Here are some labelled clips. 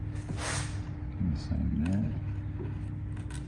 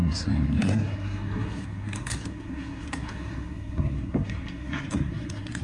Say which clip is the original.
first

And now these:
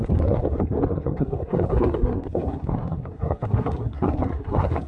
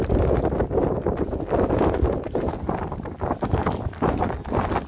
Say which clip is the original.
second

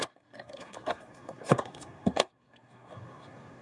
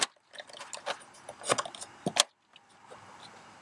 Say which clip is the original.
second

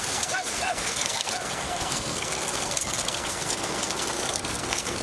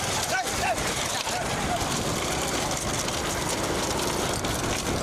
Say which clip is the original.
second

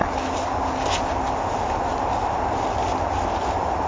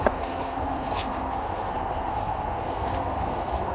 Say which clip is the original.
first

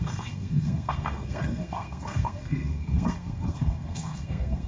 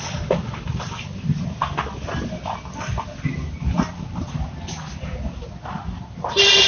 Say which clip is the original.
second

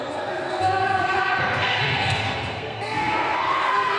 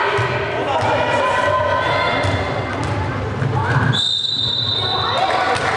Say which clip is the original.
second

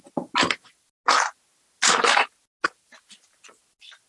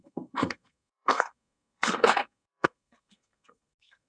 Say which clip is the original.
first